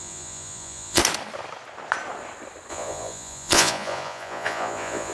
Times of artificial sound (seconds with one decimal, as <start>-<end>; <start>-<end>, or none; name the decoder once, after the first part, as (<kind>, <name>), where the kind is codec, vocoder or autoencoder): 0.0-1.0 (vocoder, Vocos); 2.7-5.1

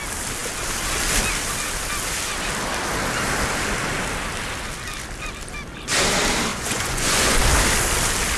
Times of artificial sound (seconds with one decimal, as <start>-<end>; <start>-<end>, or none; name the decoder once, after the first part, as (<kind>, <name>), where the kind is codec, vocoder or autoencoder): 6.5-7.4 (vocoder, Vocos)

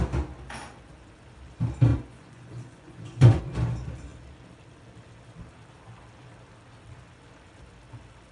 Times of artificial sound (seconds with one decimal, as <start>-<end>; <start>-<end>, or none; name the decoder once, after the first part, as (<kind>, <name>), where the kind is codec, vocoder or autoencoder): 1.9-3.4 (vocoder, Vocos)